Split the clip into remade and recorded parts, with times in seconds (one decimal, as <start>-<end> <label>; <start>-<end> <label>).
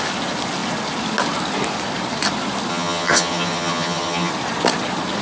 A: 0.0-2.7 recorded; 2.7-4.3 remade; 4.3-5.2 recorded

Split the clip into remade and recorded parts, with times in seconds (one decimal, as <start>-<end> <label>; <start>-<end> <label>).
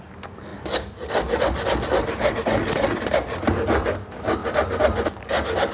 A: 0.0-5.7 recorded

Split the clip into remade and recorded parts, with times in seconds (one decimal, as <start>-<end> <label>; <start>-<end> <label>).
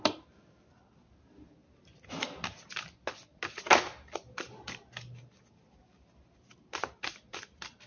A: 0.0-7.9 recorded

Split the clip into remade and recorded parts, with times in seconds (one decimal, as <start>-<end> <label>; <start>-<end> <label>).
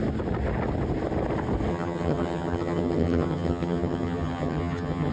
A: 0.0-1.7 recorded; 1.7-5.1 remade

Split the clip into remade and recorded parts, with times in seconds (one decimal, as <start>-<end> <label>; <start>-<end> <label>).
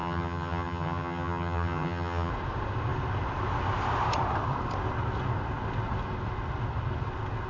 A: 0.0-2.3 remade; 2.3-7.5 recorded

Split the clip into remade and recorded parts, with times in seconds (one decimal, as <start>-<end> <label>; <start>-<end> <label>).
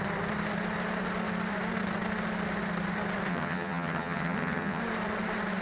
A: 0.0-3.3 recorded; 3.3-4.8 remade; 4.8-5.6 recorded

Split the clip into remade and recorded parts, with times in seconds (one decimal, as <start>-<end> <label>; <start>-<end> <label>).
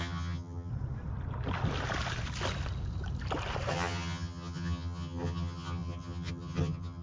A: 0.0-0.7 remade; 0.7-3.7 recorded; 3.7-7.0 remade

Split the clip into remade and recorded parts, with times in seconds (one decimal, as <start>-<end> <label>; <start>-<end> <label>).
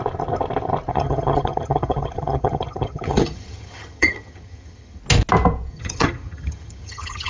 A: 0.0-0.9 recorded; 0.9-5.0 remade; 5.0-5.7 recorded; 5.7-7.3 remade